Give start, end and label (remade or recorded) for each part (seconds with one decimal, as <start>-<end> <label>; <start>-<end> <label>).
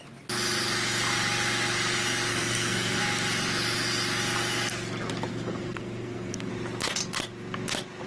0.0-2.3 recorded; 2.3-3.0 remade; 3.0-5.3 recorded; 5.3-6.5 remade; 6.5-8.1 recorded